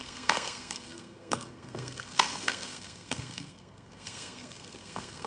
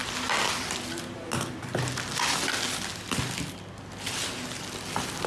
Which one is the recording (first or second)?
second